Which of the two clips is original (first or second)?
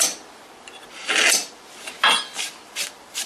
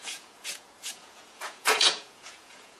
first